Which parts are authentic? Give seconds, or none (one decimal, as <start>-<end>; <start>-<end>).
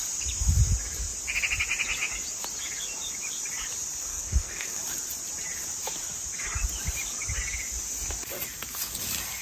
0.0-4.1; 4.8-9.4